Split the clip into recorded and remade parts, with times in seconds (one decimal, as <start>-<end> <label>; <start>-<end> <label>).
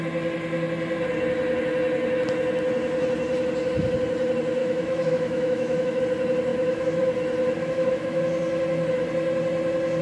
0.0-4.6 recorded; 4.6-6.0 remade; 6.0-6.5 recorded; 6.5-7.0 remade; 7.0-7.6 recorded; 7.6-8.2 remade; 8.2-10.0 recorded